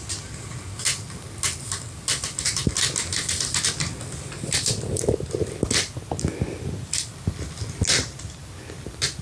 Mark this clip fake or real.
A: real